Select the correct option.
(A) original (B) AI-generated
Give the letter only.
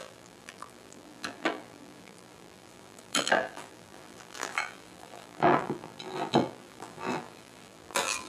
B